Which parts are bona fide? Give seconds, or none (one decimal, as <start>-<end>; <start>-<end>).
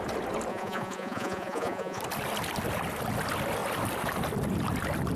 0.0-0.5; 2.0-5.2